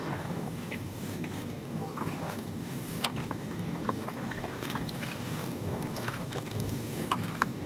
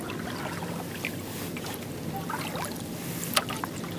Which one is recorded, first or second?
second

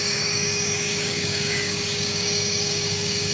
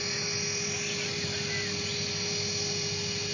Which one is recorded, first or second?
second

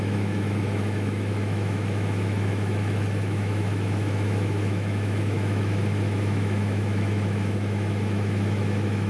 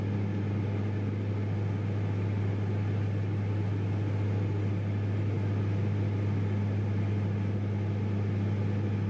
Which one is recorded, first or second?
second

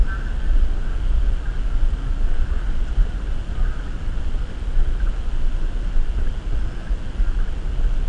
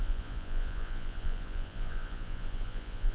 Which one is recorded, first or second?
first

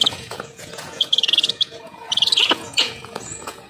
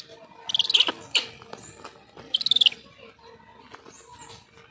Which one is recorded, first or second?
second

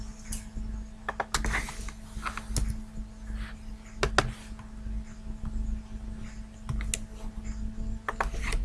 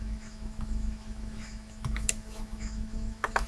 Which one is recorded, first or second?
first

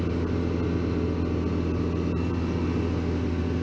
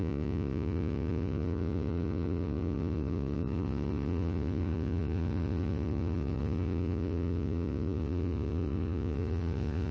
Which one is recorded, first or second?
first